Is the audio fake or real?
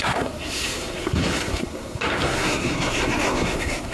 fake